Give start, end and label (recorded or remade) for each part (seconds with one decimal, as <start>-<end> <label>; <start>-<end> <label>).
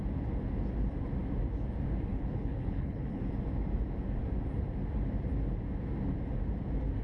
0.0-2.1 recorded; 2.1-3.2 remade; 3.2-7.0 recorded